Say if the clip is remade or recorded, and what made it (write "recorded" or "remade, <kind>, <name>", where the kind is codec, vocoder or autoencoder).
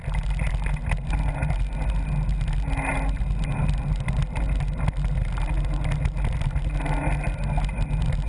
recorded